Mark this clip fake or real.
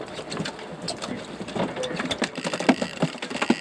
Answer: real